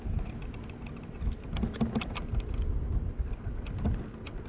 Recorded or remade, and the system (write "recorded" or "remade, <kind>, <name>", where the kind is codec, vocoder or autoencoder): recorded